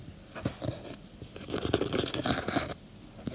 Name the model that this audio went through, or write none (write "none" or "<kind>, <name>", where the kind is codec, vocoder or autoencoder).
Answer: none